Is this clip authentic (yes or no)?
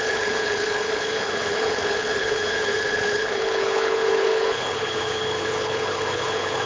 no